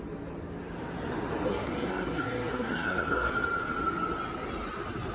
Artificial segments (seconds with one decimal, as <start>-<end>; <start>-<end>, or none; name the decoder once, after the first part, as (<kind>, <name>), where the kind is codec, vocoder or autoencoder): 1.5-3.3 (codec, SNAC)